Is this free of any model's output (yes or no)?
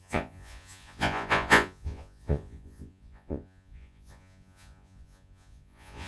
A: no